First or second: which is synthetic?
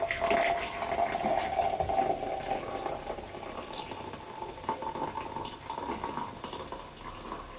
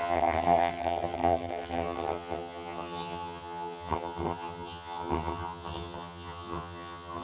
second